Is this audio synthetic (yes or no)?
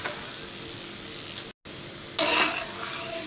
no